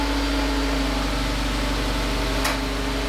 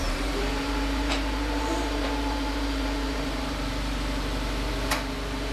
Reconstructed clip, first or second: second